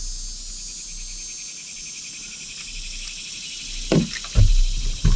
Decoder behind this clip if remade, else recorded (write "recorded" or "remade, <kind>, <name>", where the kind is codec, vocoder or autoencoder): recorded